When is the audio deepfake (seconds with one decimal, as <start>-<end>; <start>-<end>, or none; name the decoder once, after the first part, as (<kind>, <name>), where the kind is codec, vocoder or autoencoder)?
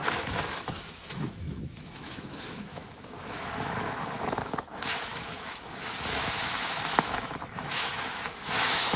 0.0-9.0 (autoencoder, DAC-VAE)